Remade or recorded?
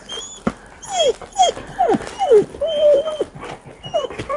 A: recorded